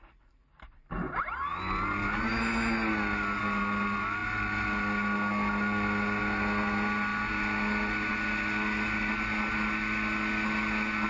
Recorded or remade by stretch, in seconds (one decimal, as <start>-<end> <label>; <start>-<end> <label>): 0.0-11.1 recorded